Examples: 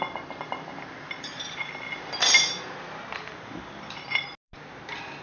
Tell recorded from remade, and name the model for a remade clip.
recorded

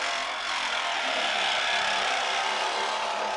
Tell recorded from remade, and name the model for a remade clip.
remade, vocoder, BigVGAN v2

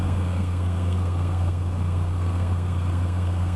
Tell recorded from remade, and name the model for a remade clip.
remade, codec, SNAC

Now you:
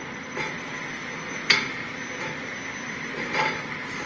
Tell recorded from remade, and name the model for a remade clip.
recorded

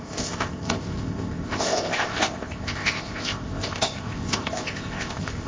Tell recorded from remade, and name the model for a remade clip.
remade, codec, ZipCodec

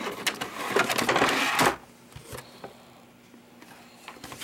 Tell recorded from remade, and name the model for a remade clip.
recorded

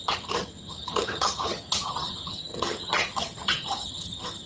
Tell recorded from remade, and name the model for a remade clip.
remade, vocoder, HiFi-GAN